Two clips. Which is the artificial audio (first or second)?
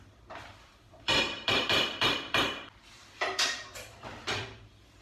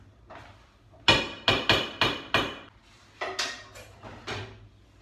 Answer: first